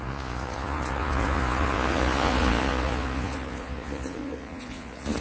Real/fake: fake